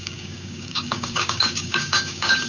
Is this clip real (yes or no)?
no